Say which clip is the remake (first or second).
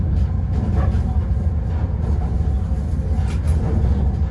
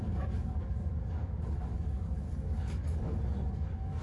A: second